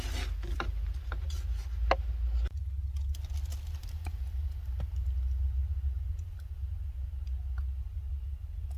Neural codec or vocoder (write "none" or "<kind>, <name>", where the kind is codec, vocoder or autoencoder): none